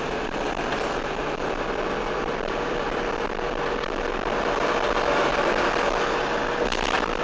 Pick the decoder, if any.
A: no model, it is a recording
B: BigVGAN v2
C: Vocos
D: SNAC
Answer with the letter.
B